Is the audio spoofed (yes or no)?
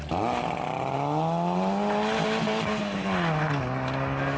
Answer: no